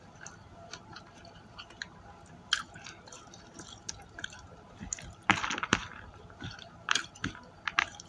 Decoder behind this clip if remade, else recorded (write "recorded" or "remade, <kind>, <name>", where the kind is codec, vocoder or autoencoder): remade, vocoder, BigVGAN v2